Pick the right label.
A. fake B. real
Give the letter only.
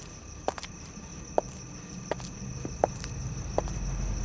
B